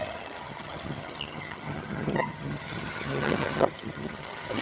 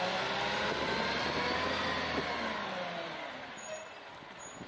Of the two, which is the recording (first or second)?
second